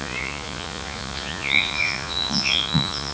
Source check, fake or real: fake